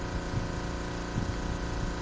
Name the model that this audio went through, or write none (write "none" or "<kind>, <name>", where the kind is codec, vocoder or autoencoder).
none